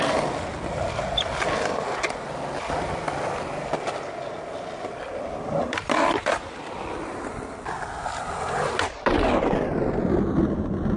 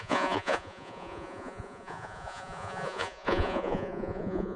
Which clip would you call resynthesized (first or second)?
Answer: second